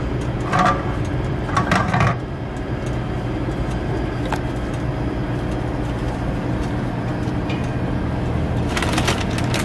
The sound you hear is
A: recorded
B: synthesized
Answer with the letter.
A